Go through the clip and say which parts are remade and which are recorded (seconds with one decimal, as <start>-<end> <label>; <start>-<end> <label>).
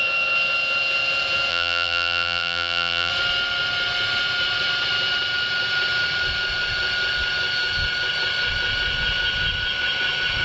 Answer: 0.0-1.5 recorded; 1.5-3.1 remade; 3.1-10.4 recorded